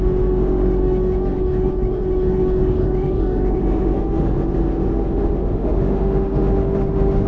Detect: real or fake fake